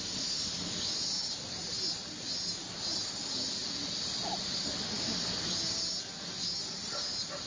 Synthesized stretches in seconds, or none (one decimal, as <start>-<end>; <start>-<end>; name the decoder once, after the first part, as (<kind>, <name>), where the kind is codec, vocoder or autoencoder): none